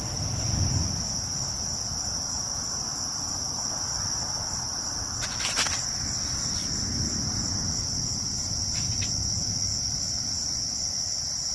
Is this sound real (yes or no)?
yes